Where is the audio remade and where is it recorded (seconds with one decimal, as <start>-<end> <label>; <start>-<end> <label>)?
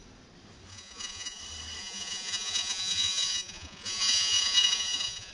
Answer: 0.0-0.7 recorded; 0.7-1.4 remade; 1.4-1.8 recorded; 1.8-5.3 remade